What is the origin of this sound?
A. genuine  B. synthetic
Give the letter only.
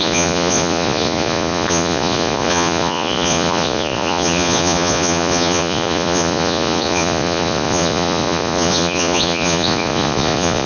B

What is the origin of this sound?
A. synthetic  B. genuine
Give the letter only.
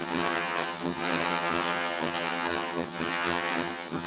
A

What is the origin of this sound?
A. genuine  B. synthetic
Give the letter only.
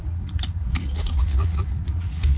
B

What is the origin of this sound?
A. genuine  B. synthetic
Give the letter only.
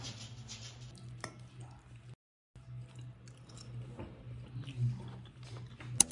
A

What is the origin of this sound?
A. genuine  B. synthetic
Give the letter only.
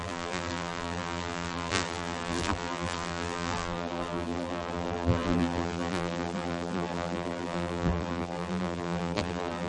B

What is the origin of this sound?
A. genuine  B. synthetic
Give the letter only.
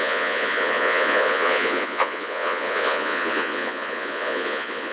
B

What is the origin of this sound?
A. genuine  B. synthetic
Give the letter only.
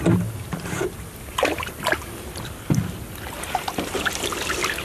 A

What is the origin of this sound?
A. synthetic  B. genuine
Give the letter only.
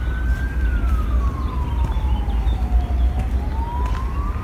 B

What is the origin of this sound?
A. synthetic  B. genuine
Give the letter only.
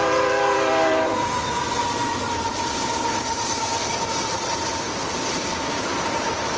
A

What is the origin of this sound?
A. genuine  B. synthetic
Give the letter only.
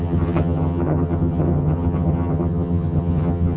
B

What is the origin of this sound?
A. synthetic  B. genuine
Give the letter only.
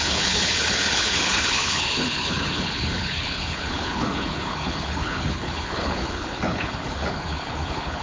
A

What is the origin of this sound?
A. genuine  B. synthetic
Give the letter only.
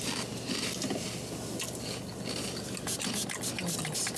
A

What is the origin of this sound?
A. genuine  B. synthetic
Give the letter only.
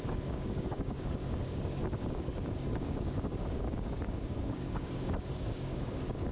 B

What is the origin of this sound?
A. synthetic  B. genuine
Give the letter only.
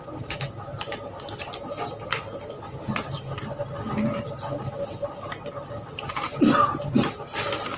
B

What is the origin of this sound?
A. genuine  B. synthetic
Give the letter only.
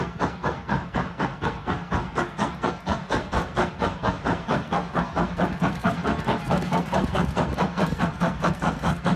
B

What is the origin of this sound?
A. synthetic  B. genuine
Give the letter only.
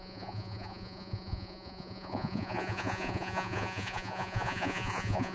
A